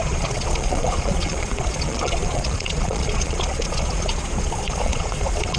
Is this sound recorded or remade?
remade